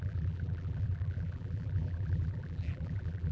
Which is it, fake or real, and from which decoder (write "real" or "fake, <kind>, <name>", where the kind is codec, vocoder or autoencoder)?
fake, vocoder, BigVGAN v2